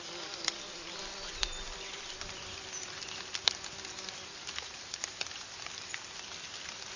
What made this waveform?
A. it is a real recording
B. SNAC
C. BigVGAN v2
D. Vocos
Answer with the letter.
A